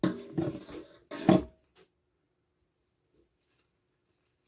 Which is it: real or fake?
real